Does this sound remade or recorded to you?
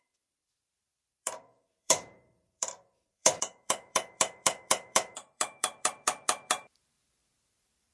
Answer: remade